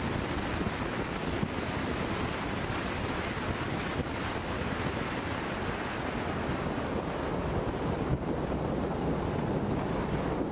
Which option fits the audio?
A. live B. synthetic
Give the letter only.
A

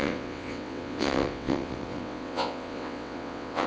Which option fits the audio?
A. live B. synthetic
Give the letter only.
B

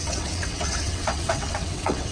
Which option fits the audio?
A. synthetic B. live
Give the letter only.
A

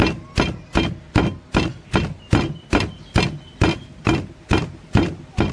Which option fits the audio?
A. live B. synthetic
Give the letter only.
A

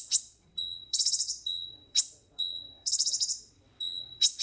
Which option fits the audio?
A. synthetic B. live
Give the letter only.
A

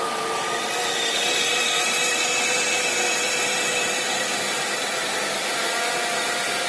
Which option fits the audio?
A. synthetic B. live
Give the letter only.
B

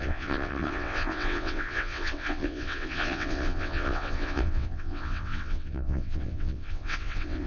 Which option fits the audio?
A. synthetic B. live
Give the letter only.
A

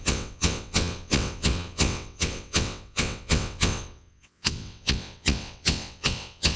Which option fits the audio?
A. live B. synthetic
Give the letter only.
B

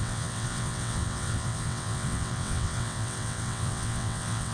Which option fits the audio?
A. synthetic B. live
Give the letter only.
A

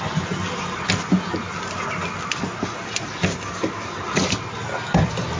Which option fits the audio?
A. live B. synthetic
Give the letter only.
A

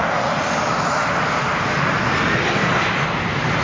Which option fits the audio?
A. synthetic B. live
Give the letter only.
B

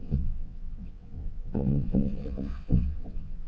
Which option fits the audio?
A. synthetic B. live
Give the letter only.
A